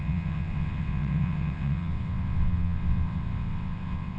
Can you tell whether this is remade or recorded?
remade